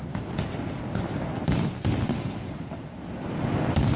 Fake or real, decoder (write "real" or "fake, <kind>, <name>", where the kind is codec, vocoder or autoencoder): real